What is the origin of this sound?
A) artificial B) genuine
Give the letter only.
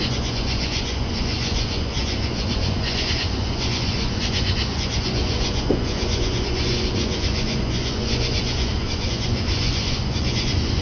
A